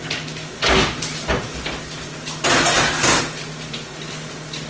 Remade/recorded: recorded